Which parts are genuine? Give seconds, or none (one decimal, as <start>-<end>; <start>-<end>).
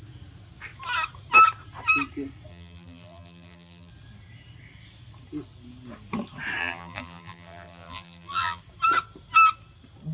0.0-2.5; 3.9-6.6; 8.6-10.1